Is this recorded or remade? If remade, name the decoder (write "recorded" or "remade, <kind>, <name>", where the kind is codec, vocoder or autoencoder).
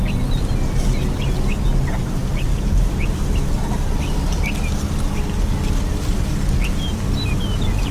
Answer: recorded